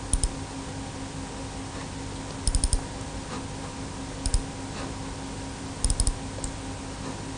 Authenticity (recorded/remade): recorded